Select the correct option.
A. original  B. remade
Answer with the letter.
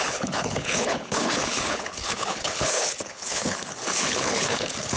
B